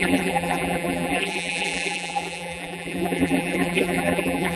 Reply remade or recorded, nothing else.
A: remade